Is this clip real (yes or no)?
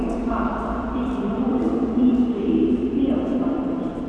no